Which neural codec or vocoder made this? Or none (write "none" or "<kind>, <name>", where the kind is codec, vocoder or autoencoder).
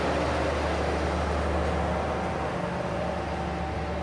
none